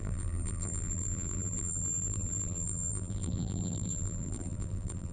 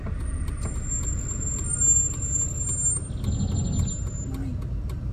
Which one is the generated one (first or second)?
first